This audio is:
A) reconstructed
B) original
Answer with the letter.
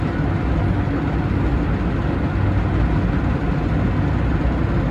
B